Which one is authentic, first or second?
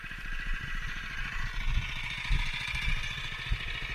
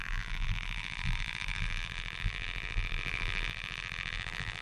first